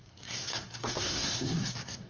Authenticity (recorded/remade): remade